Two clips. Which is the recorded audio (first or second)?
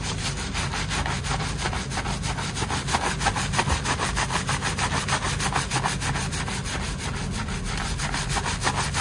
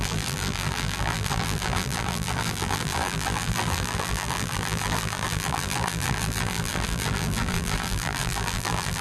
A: first